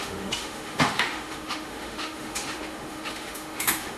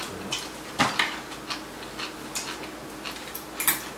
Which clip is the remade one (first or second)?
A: first